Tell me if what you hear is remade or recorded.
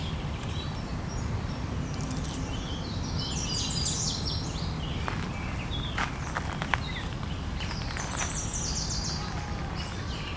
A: recorded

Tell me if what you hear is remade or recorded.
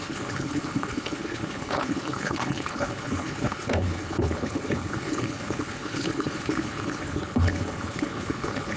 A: remade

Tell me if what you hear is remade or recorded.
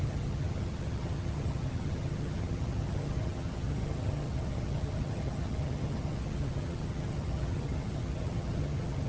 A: remade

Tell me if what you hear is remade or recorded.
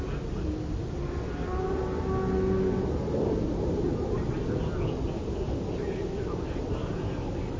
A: recorded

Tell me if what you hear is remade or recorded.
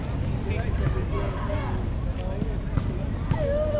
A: recorded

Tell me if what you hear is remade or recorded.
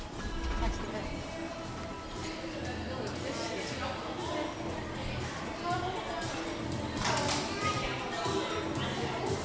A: recorded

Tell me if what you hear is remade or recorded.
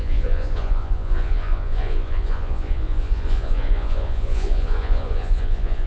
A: remade